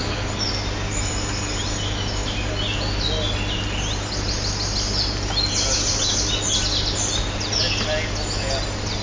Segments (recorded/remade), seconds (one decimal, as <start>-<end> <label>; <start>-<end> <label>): 0.0-9.0 recorded